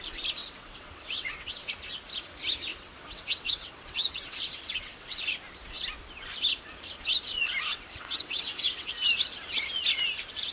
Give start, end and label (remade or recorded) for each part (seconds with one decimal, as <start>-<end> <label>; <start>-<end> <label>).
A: 0.0-0.4 recorded; 0.4-1.7 remade; 1.7-2.7 recorded; 2.7-5.2 remade; 5.2-7.7 recorded; 7.7-8.9 remade; 8.9-10.5 recorded

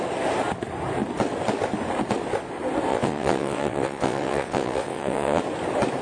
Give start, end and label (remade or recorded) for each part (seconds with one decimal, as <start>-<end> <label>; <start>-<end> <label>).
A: 0.0-2.9 recorded; 2.9-5.4 remade; 5.4-6.0 recorded